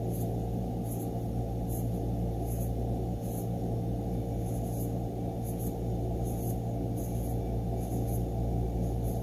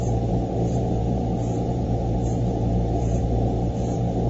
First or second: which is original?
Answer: first